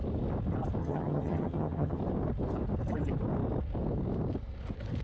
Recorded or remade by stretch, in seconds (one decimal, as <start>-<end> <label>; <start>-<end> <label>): 0.0-0.8 recorded; 0.8-2.0 remade; 2.0-5.0 recorded